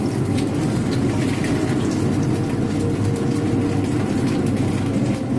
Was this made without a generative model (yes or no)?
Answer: yes